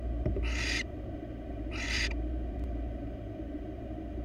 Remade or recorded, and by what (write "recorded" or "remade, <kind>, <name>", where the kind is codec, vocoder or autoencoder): remade, vocoder, BigVGAN v2